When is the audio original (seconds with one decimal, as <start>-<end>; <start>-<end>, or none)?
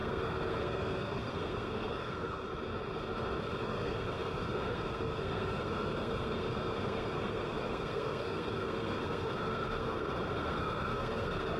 2.4-3.6